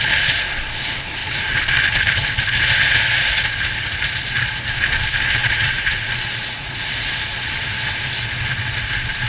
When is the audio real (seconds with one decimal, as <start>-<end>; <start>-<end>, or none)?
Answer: 0.0-5.4; 7.1-9.3